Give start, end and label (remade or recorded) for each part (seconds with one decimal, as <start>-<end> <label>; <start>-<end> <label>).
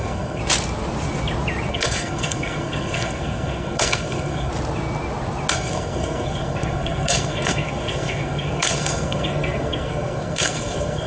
0.0-0.4 remade; 0.4-1.7 recorded; 1.7-4.5 remade; 4.5-5.5 recorded; 5.5-11.1 remade